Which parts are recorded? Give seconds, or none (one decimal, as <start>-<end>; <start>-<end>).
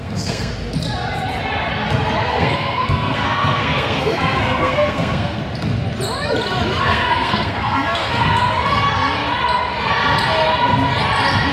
0.5-2.3; 5.4-6.8; 8.4-11.5